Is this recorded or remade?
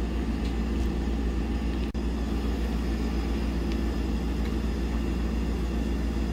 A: recorded